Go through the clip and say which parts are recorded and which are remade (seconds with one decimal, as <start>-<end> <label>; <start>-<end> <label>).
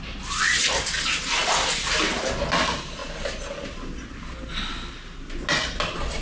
0.0-6.2 recorded